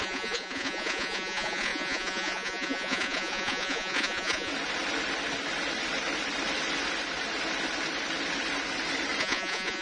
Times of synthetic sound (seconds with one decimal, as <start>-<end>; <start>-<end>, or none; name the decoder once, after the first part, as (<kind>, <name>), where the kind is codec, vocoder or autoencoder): 0.0-4.5 (vocoder, Vocos); 9.2-9.8